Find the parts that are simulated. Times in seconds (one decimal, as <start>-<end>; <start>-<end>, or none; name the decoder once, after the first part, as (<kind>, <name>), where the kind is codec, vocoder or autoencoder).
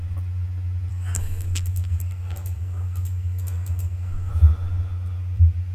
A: 0.9-4.3 (codec, SNAC)